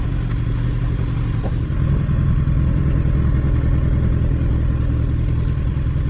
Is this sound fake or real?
real